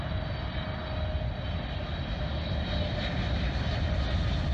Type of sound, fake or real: real